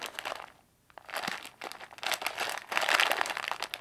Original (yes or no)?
yes